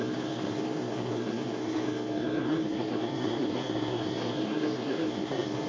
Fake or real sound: fake